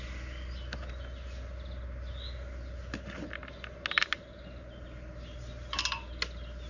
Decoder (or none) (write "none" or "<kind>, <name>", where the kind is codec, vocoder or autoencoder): none